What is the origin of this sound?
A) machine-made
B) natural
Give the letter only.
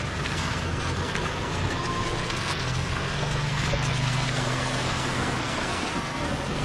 A